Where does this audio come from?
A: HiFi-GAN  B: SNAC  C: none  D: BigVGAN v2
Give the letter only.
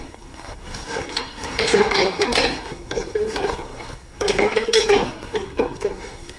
B